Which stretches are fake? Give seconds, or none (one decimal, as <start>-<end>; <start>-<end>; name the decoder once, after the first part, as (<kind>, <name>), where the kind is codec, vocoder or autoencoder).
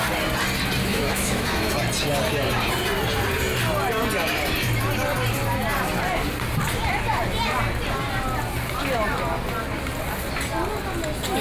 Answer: 0.8-1.7 (autoencoder, DAC-VAE)